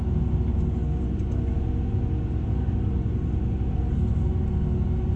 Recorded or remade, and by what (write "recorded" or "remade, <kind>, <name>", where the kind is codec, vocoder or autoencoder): recorded